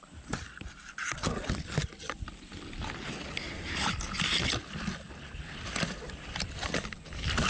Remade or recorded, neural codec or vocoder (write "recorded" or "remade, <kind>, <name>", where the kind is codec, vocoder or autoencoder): recorded